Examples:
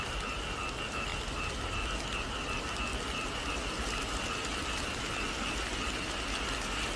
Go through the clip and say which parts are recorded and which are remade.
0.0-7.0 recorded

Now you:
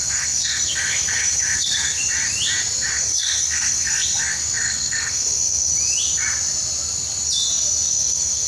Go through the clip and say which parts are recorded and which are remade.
0.0-2.0 remade; 2.0-2.9 recorded; 2.9-5.7 remade; 5.7-7.9 recorded; 7.9-8.5 remade

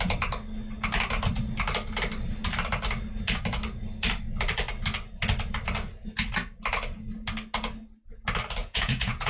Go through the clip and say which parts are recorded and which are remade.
0.0-8.6 recorded; 8.6-9.3 remade

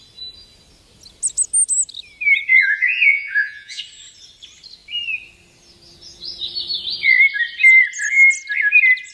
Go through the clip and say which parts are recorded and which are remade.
0.0-2.5 recorded; 2.5-3.8 remade; 3.8-9.1 recorded